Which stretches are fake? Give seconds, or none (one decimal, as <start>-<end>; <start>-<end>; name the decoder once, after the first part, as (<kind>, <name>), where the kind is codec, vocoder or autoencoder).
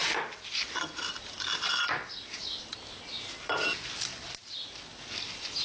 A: none